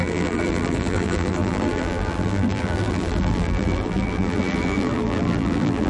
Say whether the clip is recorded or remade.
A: remade